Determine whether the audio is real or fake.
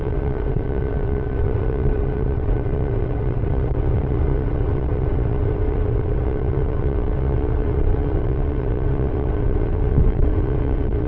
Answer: fake